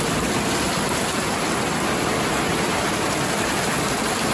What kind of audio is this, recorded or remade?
recorded